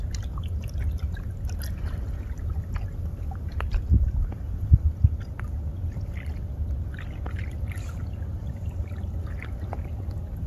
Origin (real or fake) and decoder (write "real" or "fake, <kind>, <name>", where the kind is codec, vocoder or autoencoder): real